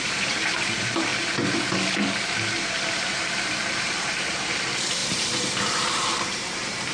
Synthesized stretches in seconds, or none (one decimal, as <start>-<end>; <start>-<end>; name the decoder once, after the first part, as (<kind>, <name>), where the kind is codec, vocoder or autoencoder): 0.0-1.1 (vocoder, BigVGAN v2); 3.1-6.9